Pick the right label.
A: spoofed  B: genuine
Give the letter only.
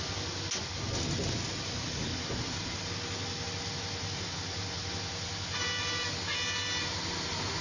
B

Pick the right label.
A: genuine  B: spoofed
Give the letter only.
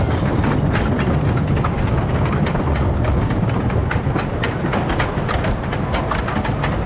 A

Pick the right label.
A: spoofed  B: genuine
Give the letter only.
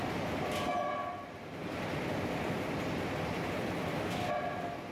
B